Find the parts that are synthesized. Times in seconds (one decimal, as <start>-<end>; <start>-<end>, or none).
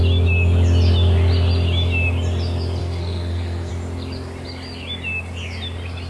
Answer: 2.8-3.7